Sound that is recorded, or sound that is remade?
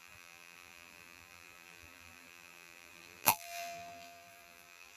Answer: remade